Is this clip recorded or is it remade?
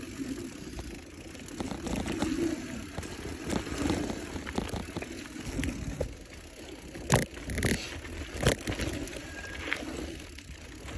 recorded